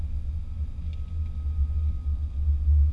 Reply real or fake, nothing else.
real